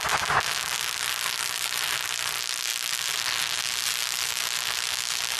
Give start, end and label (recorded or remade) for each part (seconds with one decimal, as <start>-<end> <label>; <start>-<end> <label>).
0.0-5.4 recorded